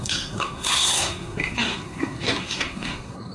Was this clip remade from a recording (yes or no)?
yes